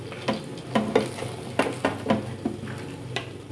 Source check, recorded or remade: recorded